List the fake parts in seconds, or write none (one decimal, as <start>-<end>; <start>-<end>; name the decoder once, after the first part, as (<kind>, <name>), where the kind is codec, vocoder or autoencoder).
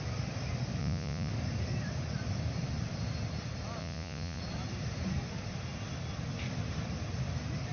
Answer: 0.8-1.3 (vocoder, Vocos); 3.8-4.4